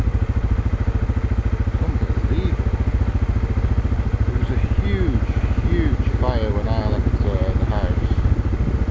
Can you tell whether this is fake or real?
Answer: real